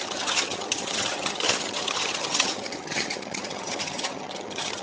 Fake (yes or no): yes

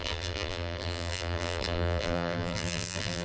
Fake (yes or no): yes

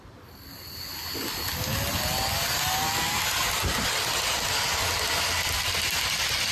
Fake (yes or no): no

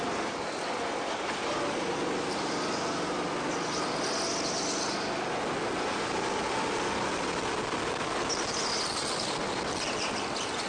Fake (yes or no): no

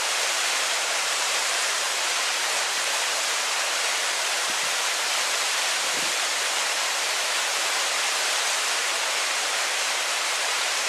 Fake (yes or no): yes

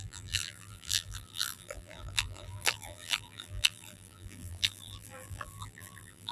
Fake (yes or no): yes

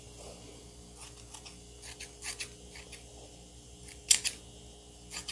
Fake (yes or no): no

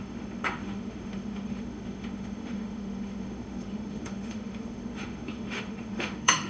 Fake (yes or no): yes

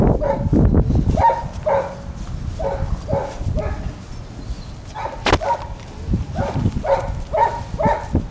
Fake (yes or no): no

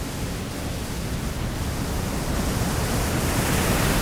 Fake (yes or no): no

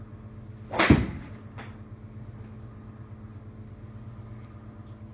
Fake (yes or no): no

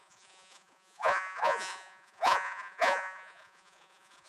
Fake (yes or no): yes